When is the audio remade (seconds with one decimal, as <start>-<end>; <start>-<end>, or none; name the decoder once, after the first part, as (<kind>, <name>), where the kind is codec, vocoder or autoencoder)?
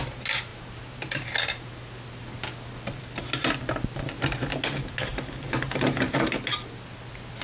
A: none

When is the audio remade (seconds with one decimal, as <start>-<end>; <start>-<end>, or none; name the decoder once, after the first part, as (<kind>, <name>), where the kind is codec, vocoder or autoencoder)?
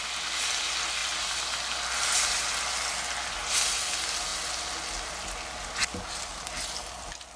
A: none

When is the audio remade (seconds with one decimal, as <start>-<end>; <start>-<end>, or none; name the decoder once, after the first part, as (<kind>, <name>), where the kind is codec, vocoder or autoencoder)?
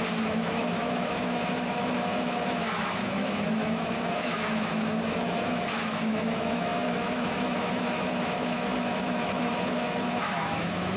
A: 0.0-11.0 (autoencoder, DAC-VAE)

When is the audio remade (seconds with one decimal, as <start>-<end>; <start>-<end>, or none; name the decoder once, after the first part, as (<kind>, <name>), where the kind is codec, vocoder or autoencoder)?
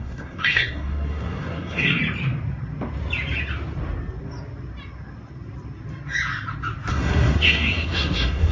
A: 0.0-2.0 (codec, SNAC); 6.9-8.5